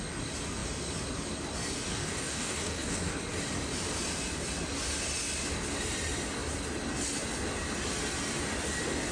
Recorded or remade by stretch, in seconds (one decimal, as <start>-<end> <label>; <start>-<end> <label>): 0.0-1.9 recorded; 1.9-3.1 remade; 3.1-9.1 recorded

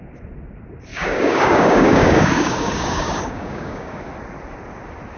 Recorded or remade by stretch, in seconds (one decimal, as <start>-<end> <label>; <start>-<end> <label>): 0.0-0.9 recorded; 0.9-4.0 remade; 4.0-5.2 recorded

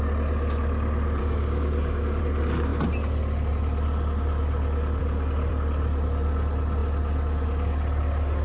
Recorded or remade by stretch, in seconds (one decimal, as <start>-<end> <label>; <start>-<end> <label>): 0.0-1.2 recorded; 1.2-2.2 remade; 2.2-8.4 recorded